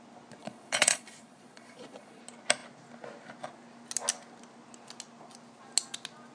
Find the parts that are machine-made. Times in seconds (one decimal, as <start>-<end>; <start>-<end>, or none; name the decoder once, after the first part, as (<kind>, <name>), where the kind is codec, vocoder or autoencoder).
0.4-2.2 (vocoder, Vocos)